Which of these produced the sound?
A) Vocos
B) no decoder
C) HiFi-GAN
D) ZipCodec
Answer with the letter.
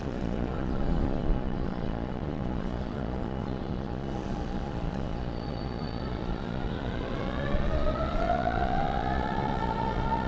A